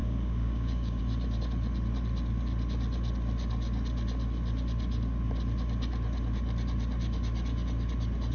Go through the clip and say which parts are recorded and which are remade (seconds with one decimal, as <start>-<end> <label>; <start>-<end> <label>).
0.0-1.0 remade; 1.0-8.3 recorded